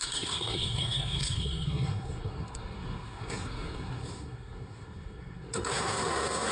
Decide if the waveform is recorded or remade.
remade